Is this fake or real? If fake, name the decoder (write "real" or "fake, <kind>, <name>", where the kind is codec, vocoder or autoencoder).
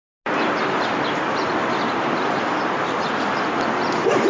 real